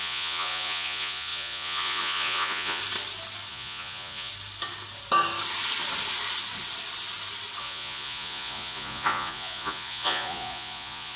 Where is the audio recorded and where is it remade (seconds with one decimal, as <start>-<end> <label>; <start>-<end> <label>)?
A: 0.0-2.8 remade; 2.8-3.5 recorded; 3.5-4.3 remade; 4.3-7.6 recorded; 7.6-11.2 remade